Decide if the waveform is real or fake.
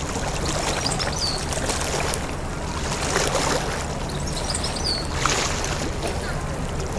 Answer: real